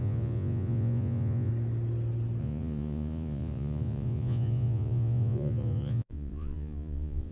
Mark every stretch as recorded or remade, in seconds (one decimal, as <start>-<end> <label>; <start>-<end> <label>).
0.0-1.5 remade; 1.5-2.4 recorded; 2.4-7.3 remade